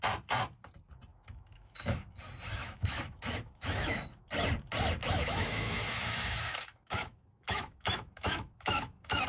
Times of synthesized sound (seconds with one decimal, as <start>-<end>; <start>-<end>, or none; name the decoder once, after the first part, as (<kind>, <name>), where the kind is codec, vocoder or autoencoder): 1.1-2.2 (autoencoder, DAC-VAE); 2.6-4.3; 5.0-9.3